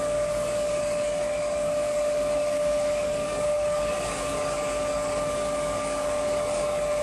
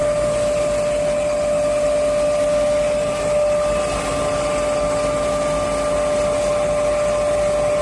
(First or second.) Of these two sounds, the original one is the second